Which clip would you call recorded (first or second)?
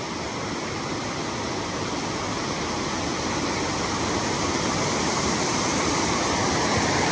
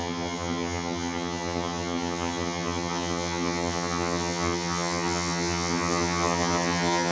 first